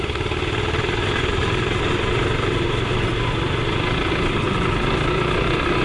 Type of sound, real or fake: real